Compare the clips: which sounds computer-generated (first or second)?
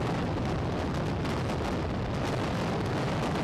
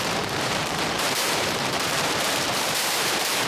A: second